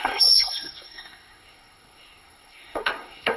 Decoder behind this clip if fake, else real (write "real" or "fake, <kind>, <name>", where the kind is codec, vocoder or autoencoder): fake, codec, SNAC